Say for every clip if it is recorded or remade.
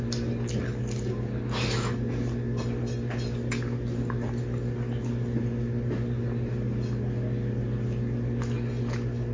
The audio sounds recorded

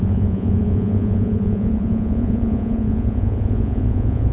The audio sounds remade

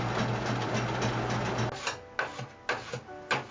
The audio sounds recorded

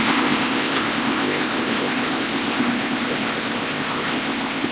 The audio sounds remade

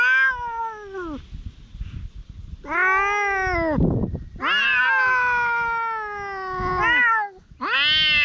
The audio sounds recorded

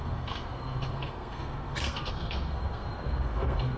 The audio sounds remade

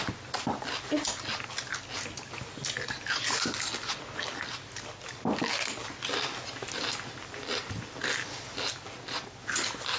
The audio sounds recorded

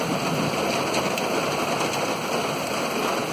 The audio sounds recorded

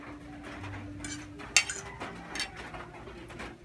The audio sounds recorded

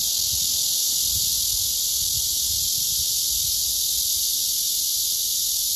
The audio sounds recorded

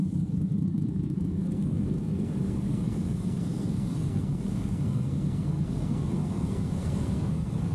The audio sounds remade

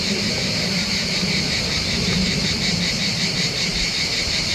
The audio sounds remade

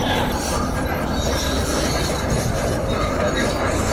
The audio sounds recorded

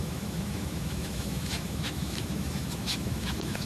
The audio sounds remade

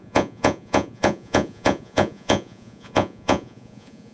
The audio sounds remade